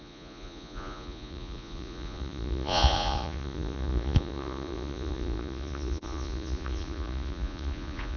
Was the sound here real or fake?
fake